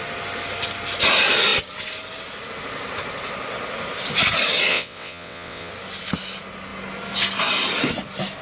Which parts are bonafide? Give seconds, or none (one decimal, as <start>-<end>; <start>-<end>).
0.0-4.7; 5.7-8.4